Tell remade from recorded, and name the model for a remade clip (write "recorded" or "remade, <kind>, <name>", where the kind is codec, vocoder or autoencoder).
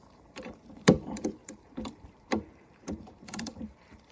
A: remade, vocoder, BigVGAN v2